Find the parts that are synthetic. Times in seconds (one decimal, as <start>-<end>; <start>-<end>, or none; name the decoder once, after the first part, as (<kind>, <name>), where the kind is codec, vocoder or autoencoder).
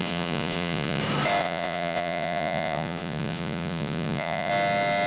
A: 0.0-1.0 (vocoder, Vocos); 1.4-4.5